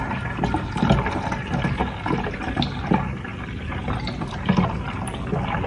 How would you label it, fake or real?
real